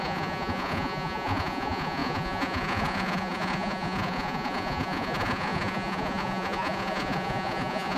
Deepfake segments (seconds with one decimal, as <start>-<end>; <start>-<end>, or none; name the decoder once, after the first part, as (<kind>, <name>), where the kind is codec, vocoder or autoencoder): 0.0-8.0 (vocoder, Vocos)

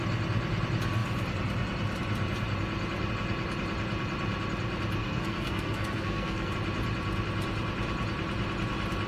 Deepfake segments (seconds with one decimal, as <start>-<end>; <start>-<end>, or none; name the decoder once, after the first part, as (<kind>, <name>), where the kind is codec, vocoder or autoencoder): 5.0-6.5 (codec, SNAC)